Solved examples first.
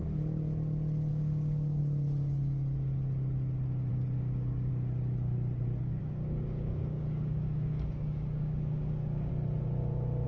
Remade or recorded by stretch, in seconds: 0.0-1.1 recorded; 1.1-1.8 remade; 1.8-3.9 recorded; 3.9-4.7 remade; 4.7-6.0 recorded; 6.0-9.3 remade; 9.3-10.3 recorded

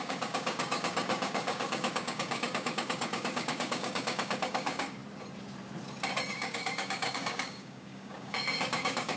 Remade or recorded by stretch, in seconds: 0.0-5.0 remade; 5.0-6.3 recorded; 6.3-9.2 remade